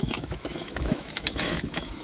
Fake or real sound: fake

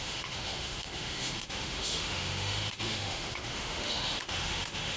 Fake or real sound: fake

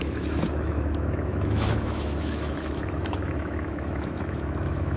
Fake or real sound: fake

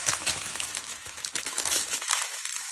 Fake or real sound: fake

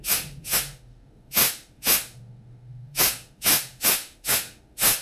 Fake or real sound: fake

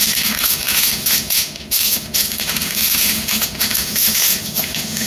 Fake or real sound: fake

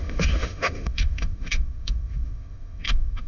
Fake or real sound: fake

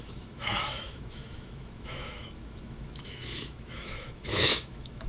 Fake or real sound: fake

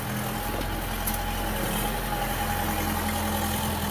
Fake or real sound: real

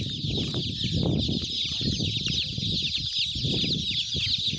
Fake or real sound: real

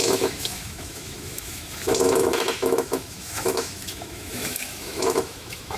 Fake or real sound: fake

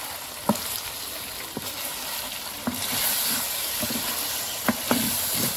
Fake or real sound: real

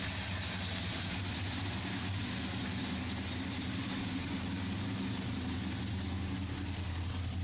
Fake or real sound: real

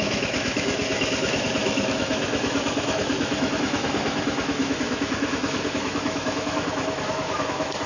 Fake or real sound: fake